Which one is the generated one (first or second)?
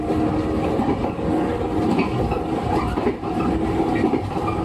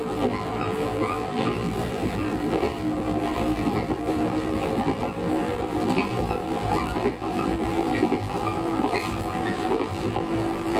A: second